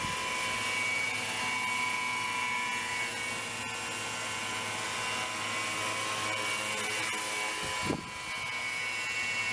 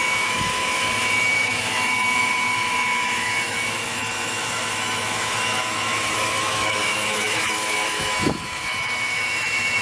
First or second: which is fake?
second